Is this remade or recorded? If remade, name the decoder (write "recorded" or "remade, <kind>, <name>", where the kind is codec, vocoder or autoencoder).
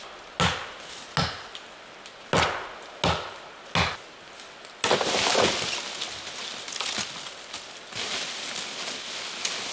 recorded